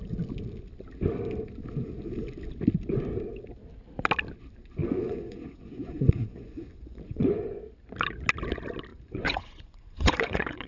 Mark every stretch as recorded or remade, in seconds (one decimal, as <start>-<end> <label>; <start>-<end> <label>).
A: 0.0-4.8 recorded; 4.8-7.6 remade; 7.6-8.9 recorded; 8.9-10.7 remade